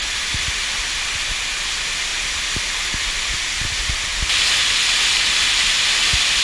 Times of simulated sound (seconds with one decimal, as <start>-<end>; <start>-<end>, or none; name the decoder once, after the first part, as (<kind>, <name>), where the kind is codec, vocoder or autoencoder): 0.0-2.1 (vocoder, BigVGAN v2); 3.0-6.4